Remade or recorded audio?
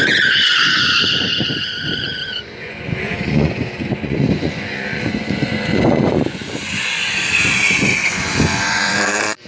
remade